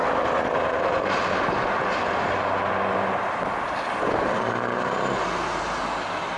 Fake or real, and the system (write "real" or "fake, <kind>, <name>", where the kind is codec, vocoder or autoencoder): real